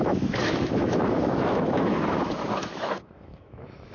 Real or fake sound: fake